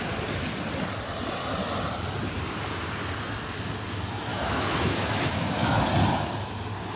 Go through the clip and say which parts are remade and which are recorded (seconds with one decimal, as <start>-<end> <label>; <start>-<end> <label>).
0.0-4.3 recorded; 4.3-5.8 remade; 5.8-7.0 recorded